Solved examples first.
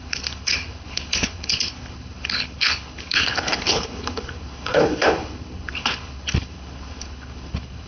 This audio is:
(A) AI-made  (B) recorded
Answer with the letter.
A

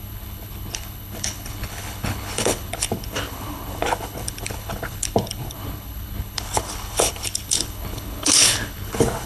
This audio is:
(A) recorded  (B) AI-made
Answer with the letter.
B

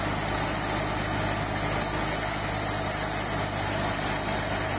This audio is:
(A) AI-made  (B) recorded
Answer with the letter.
B